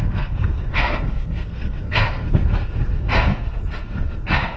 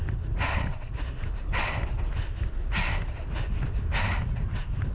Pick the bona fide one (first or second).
second